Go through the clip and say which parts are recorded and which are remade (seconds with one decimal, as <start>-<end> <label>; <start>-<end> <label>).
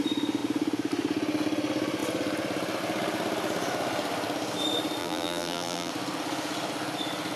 0.0-5.0 recorded; 5.0-5.9 remade; 5.9-7.4 recorded